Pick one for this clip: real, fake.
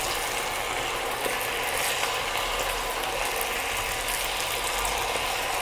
real